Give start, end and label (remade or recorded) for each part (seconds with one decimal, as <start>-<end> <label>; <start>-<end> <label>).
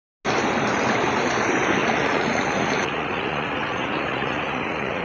0.0-1.8 recorded; 1.8-5.0 remade